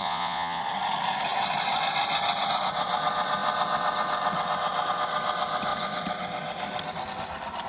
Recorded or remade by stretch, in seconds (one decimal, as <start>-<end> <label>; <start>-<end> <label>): 0.0-0.6 remade; 0.6-7.7 recorded